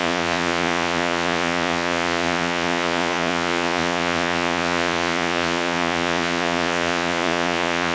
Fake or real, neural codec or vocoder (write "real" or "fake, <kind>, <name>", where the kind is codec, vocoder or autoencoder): fake, vocoder, Vocos